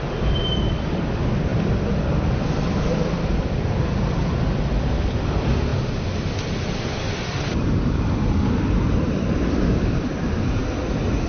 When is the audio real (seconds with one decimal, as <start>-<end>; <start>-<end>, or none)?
5.7-7.1; 10.6-11.3